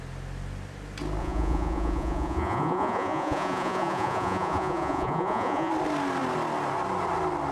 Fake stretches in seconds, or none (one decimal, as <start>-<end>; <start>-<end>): 1.2-5.7